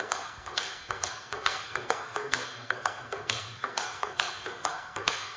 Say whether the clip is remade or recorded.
remade